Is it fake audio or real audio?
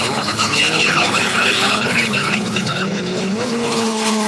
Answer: fake